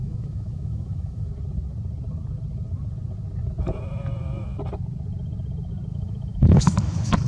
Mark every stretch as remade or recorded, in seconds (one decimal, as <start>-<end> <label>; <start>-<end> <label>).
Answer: 0.0-1.3 remade; 1.3-5.9 recorded; 5.9-7.3 remade